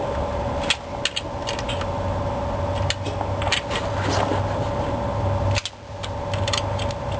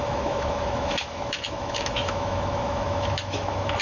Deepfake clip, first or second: second